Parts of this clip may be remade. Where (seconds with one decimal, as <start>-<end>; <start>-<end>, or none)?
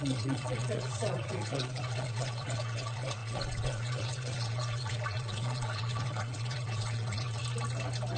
0.0-7.4